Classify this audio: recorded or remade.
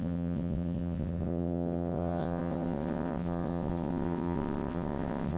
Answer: remade